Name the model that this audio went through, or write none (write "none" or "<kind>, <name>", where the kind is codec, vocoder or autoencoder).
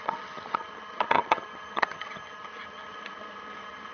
vocoder, HiFi-GAN